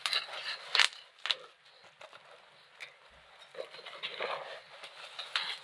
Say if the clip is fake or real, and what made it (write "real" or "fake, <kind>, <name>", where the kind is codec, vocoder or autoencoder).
real